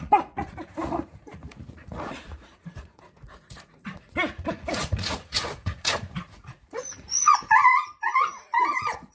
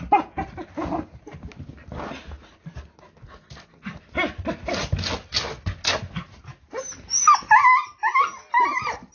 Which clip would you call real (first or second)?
second